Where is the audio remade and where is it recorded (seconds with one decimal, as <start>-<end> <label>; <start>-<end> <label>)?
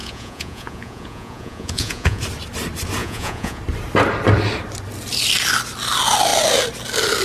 0.0-2.2 remade; 2.2-3.0 recorded; 3.0-3.6 remade; 3.6-7.2 recorded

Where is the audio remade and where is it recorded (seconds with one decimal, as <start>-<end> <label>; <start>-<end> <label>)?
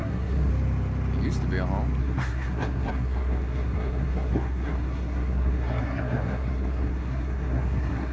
0.0-0.5 remade; 0.5-2.0 recorded; 2.0-8.1 remade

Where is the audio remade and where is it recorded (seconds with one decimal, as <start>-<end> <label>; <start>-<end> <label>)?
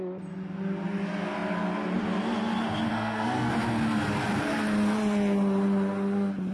0.0-2.9 recorded; 2.9-3.5 remade; 3.5-6.5 recorded